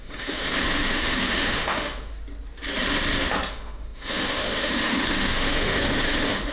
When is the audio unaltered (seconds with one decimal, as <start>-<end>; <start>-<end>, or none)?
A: 2.1-3.5